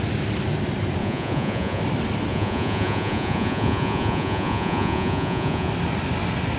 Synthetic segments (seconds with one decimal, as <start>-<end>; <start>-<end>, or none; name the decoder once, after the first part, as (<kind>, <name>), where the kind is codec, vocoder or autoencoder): 1.0-1.8 (vocoder, Vocos); 2.3-5.7